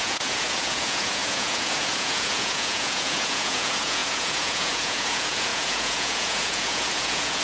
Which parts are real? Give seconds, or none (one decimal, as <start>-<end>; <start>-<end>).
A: none